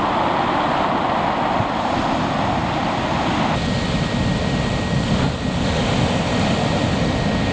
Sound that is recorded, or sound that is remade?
recorded